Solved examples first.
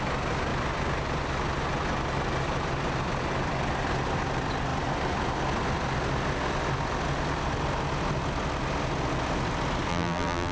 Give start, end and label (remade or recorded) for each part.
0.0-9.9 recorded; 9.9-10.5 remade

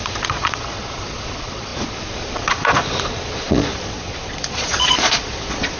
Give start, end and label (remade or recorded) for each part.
0.0-5.8 remade

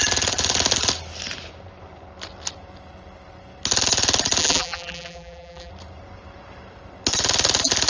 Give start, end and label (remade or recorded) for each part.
0.0-4.4 recorded; 4.4-5.7 remade; 5.7-7.9 recorded